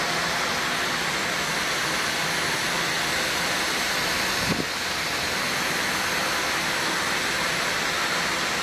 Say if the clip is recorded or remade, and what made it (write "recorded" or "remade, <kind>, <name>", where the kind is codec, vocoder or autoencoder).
recorded